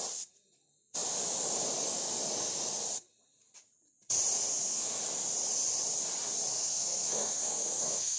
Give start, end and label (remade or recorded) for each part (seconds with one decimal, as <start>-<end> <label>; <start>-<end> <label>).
0.0-4.5 recorded; 4.5-5.0 remade; 5.0-6.5 recorded; 6.5-8.2 remade